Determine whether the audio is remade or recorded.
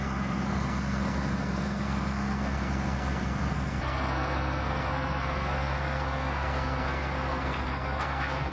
remade